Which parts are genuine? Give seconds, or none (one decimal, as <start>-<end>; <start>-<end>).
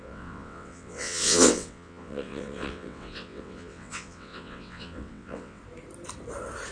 5.6-6.7